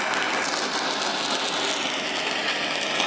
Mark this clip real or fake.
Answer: real